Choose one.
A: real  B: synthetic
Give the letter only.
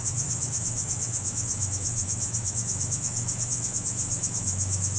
B